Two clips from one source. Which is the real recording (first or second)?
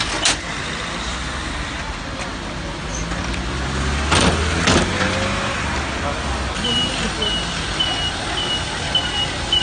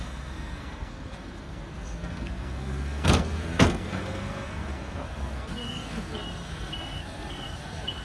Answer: first